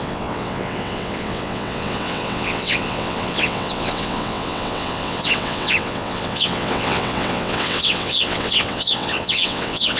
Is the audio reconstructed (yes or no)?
yes